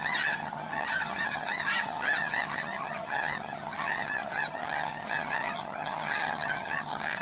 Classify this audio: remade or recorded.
remade